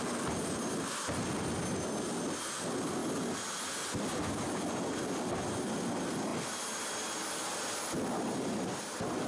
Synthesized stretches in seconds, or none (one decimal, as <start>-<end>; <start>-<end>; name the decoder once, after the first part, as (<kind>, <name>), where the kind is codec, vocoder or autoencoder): none